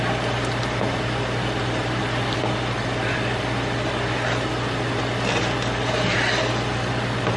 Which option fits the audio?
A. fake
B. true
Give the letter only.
B